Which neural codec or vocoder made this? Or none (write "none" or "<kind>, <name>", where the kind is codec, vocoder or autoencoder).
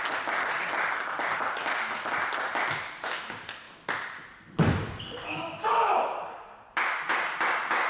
none